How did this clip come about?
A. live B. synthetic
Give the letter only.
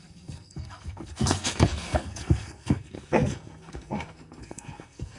B